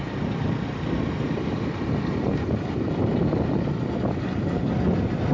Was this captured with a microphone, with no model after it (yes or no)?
yes